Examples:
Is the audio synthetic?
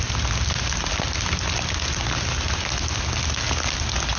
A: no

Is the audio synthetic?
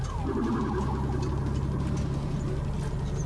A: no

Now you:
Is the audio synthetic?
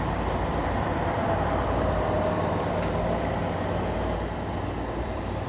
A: yes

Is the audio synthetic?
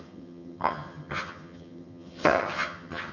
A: yes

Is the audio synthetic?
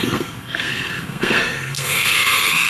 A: yes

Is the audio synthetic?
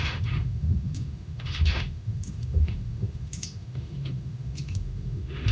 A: yes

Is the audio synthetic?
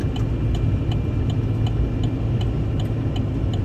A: no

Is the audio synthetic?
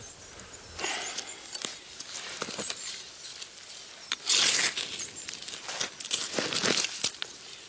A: no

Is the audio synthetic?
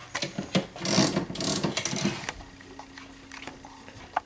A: no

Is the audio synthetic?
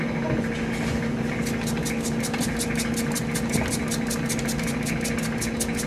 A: no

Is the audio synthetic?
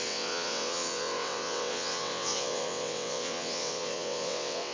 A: yes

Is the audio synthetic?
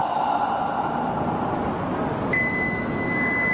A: no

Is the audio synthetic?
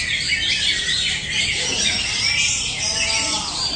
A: no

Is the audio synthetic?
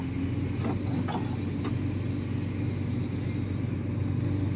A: no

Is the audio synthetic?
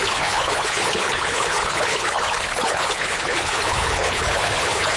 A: yes